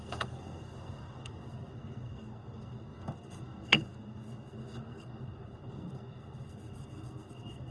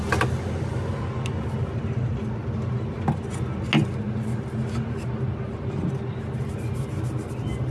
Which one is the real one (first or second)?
second